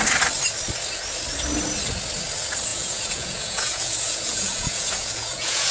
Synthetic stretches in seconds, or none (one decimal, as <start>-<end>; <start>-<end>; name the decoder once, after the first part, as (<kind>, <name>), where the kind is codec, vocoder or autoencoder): 2.7-5.7 (vocoder, Vocos)